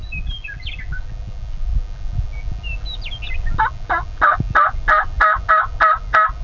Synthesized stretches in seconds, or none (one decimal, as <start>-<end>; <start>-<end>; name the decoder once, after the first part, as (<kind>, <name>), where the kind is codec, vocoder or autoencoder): none